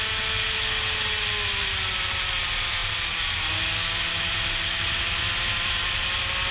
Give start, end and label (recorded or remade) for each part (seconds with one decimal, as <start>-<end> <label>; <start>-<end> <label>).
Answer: 0.0-6.5 recorded